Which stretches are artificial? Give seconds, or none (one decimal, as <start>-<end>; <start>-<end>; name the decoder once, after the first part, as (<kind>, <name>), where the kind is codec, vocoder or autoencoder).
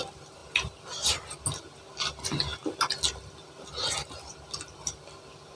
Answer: none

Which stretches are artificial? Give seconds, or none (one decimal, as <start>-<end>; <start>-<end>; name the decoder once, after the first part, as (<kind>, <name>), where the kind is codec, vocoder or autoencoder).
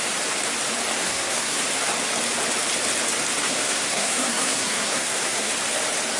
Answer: 1.0-1.6 (codec, SNAC); 3.4-5.5